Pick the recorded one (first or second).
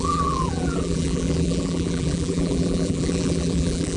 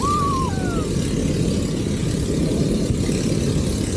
second